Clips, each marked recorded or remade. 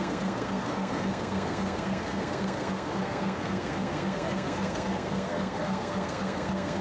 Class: remade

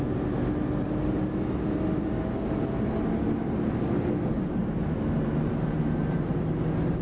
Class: recorded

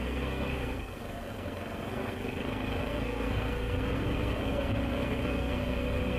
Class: remade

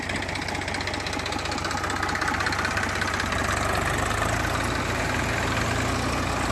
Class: recorded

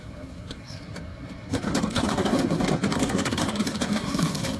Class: remade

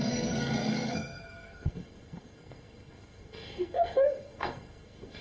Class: remade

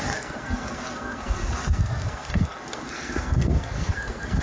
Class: remade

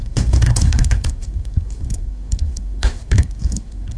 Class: remade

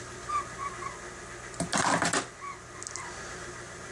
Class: recorded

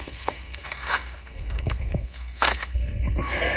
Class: remade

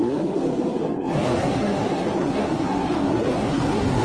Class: remade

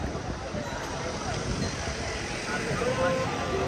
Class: recorded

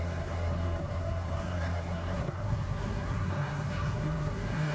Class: remade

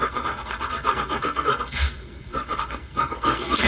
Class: remade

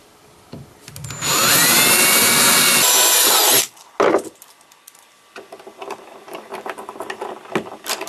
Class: recorded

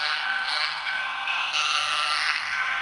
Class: remade